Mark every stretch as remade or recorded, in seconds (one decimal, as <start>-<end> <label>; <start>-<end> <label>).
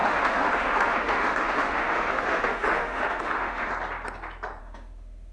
0.0-3.7 remade; 3.7-4.6 recorded; 4.6-5.3 remade